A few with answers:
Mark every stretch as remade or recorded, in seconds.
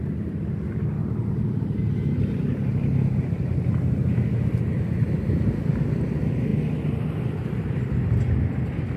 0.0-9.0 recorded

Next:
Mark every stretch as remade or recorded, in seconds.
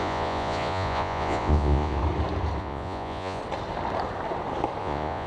0.0-2.0 remade; 2.0-2.6 recorded; 2.6-3.4 remade; 3.4-4.8 recorded; 4.8-5.3 remade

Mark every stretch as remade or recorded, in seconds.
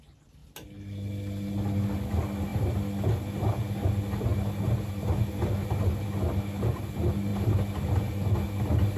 0.0-9.0 recorded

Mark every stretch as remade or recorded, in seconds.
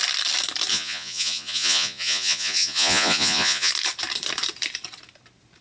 0.0-0.7 recorded; 0.7-3.7 remade; 3.7-5.6 recorded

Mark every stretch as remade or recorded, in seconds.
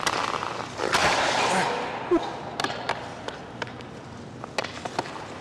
0.0-5.4 recorded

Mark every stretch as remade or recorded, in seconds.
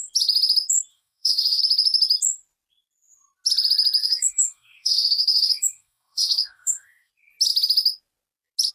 0.0-0.9 recorded; 0.9-1.6 remade; 1.6-4.0 recorded; 4.0-7.1 remade; 7.1-8.7 recorded